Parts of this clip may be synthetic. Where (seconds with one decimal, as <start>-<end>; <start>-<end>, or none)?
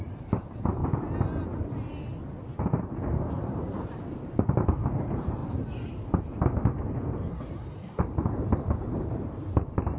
0.0-0.8; 2.6-5.4; 7.5-10.0